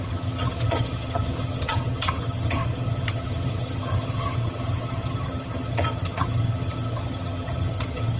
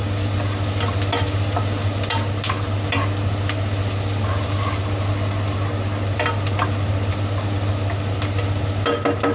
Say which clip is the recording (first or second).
second